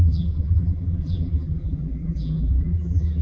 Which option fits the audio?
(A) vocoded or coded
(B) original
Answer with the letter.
A